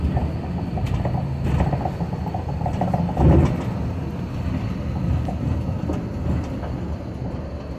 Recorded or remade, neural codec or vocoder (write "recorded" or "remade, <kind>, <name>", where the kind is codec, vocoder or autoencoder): recorded